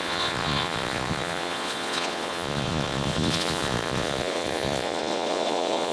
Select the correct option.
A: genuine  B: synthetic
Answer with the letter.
B